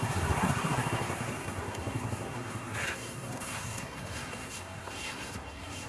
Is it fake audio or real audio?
fake